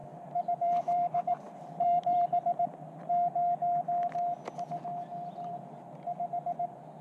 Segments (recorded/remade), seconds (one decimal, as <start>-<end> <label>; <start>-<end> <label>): 0.0-3.1 remade; 3.1-5.1 recorded; 5.1-5.6 remade; 5.6-7.0 recorded